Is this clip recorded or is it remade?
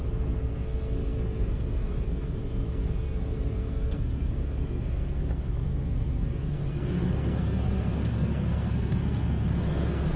remade